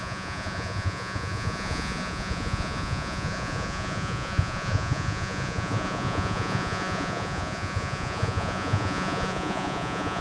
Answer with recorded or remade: remade